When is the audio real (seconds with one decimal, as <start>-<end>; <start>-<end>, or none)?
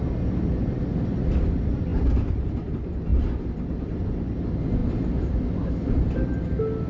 0.0-6.9